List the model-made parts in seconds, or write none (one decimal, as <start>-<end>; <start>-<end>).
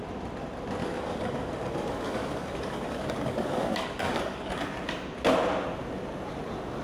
0.8-4.6